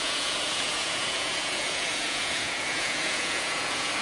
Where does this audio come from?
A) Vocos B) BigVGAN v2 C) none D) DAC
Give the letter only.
A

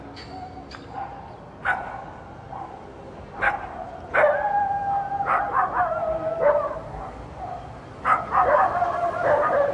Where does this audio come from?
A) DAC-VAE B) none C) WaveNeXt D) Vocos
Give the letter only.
B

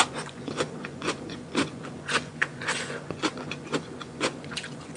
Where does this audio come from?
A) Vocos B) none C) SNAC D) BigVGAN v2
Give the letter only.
A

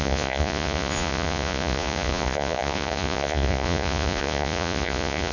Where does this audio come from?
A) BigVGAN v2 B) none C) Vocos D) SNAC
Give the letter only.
C